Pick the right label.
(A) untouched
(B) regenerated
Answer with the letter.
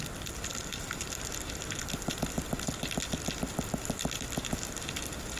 A